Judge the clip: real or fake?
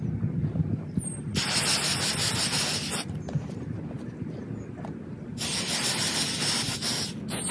real